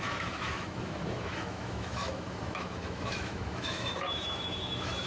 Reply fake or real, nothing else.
fake